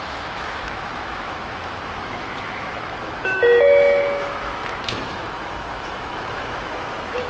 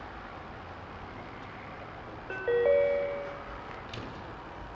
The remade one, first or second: first